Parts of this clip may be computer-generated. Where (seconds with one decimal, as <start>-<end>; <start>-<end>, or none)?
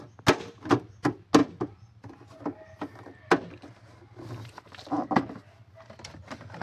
none